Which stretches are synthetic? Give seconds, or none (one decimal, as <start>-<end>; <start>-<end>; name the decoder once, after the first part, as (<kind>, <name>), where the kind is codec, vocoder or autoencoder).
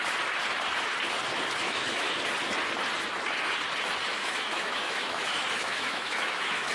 1.6-2.2 (autoencoder, DAC-VAE); 4.1-6.7